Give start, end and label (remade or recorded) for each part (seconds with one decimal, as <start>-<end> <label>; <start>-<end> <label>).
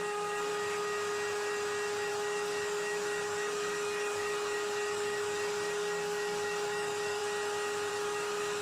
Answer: 0.0-0.5 remade; 0.5-2.1 recorded; 2.1-7.2 remade; 7.2-7.9 recorded; 7.9-8.6 remade